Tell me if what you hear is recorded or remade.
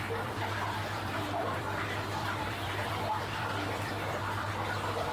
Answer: remade